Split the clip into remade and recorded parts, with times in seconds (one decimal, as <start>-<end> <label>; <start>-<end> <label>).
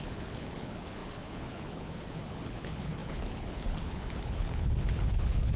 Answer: 0.0-5.6 remade